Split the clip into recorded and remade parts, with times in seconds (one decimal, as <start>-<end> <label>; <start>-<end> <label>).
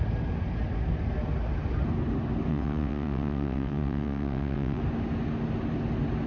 0.0-2.5 recorded; 2.5-4.8 remade; 4.8-6.3 recorded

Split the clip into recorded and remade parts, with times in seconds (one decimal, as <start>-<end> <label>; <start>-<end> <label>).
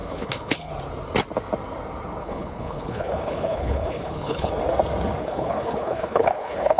0.0-0.7 remade; 0.7-2.2 recorded; 2.2-4.5 remade; 4.5-5.2 recorded; 5.2-6.8 remade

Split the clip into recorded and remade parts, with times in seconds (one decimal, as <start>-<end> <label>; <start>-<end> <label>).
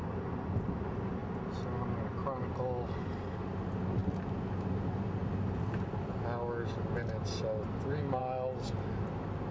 0.0-9.5 recorded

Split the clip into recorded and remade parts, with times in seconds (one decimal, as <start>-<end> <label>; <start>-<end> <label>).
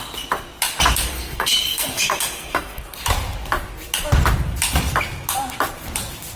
0.0-1.1 recorded; 1.1-2.8 remade; 2.8-6.4 recorded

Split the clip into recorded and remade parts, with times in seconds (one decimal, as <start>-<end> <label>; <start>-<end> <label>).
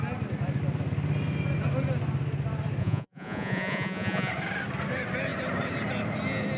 0.0-2.8 recorded; 2.8-4.3 remade; 4.3-6.6 recorded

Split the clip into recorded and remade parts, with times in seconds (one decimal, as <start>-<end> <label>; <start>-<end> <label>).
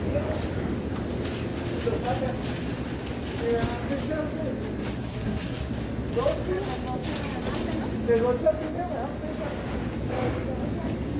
0.0-5.0 recorded; 5.0-5.7 remade; 5.7-11.2 recorded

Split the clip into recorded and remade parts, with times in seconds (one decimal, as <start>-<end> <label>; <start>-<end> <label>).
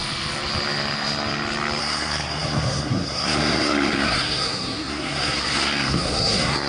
0.0-1.8 recorded; 1.8-6.7 remade